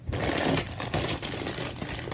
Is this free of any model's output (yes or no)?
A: yes